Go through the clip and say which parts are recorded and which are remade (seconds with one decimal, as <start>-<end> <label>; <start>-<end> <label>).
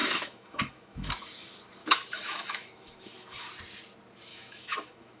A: 0.0-1.1 remade; 1.1-1.8 recorded; 1.8-3.5 remade; 3.5-4.3 recorded; 4.3-5.2 remade